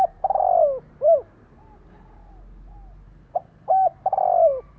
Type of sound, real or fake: real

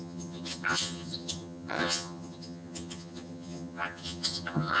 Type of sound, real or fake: fake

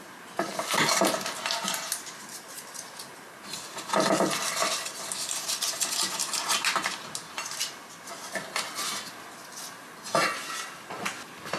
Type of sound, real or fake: real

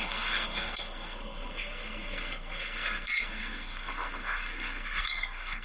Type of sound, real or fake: fake